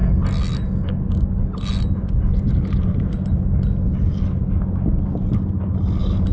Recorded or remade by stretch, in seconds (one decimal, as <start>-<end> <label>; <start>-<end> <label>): 0.0-6.3 recorded